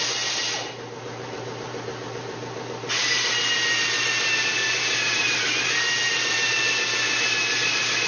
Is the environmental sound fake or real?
real